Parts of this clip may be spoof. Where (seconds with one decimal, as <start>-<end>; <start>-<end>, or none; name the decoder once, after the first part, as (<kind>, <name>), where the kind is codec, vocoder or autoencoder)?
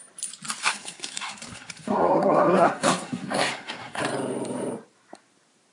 0.6-4.0 (codec, SNAC)